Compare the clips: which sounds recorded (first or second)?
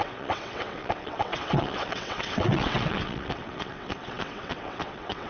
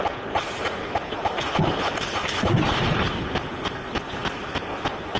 second